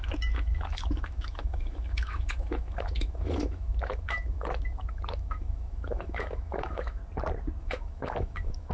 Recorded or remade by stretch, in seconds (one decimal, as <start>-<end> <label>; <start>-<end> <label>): 0.0-7.0 remade; 7.0-7.6 recorded; 7.6-8.7 remade